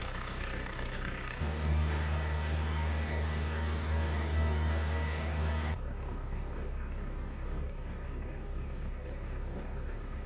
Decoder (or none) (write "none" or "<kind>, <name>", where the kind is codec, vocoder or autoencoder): codec, DAC